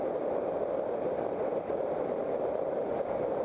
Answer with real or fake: real